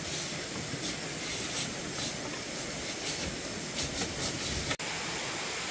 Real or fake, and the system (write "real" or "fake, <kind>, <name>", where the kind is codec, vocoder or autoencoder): real